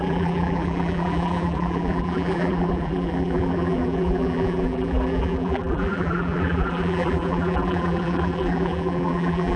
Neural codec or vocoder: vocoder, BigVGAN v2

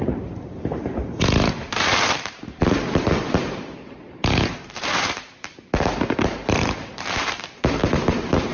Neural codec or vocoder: vocoder, BigVGAN v2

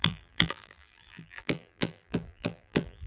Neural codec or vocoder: vocoder, BigVGAN v2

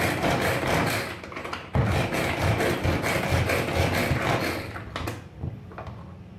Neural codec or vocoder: none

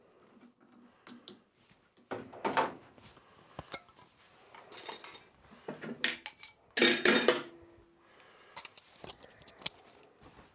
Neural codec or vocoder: none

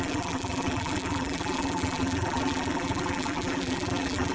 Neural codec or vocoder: vocoder, BigVGAN v2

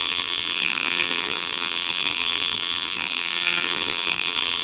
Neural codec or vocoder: vocoder, BigVGAN v2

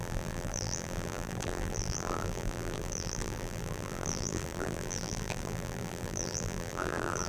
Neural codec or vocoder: vocoder, BigVGAN v2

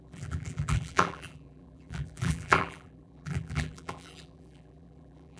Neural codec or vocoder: vocoder, BigVGAN v2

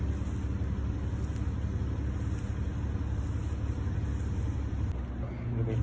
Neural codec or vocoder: none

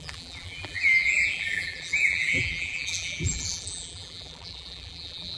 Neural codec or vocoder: vocoder, BigVGAN v2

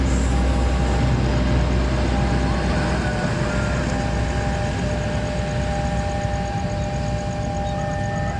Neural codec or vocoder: none